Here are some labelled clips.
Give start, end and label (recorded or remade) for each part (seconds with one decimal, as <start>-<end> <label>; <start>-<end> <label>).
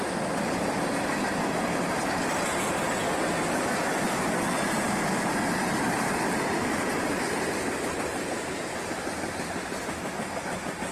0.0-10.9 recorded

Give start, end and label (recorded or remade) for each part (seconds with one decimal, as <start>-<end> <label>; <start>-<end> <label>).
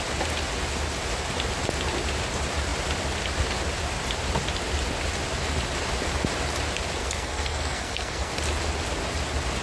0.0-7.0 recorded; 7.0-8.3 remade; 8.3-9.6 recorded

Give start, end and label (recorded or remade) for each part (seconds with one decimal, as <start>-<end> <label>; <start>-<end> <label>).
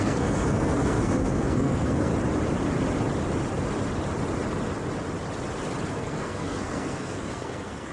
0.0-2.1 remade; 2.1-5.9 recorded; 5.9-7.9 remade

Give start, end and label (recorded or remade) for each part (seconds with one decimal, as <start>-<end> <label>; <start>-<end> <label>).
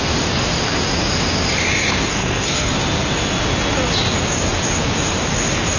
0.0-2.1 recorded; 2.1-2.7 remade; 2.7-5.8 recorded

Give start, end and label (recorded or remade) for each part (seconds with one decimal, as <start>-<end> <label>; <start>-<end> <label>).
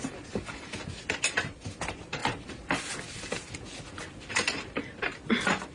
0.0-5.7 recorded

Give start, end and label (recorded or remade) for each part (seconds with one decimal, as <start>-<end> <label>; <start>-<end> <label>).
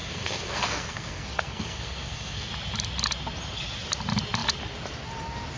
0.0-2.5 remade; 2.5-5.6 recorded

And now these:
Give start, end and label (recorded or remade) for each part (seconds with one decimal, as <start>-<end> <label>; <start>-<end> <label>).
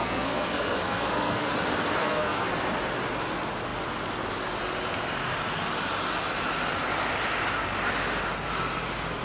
0.0-1.5 remade; 1.5-2.0 recorded; 2.0-2.5 remade; 2.5-9.2 recorded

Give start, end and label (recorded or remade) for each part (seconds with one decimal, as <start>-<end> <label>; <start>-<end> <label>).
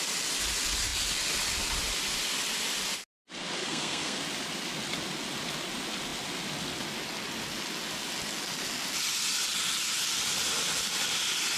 0.0-3.6 recorded; 3.6-4.2 remade; 4.2-11.6 recorded